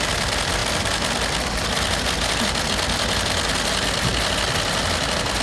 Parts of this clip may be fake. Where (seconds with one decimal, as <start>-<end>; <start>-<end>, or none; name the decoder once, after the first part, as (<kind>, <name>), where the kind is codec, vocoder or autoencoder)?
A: none